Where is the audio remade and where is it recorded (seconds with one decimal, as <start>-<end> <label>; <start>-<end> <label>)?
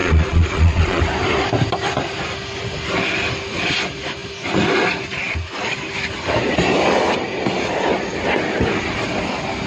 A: 0.0-1.0 remade; 1.0-9.7 recorded